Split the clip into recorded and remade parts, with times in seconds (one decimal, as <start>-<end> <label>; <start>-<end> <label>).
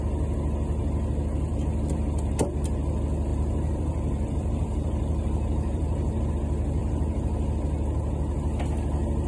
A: 0.0-3.3 recorded; 3.3-6.3 remade; 6.3-6.8 recorded; 6.8-7.3 remade; 7.3-9.3 recorded